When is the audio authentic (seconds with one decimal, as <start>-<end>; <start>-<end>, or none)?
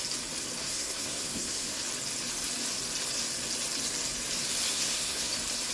0.0-0.6; 1.8-4.7; 5.3-5.7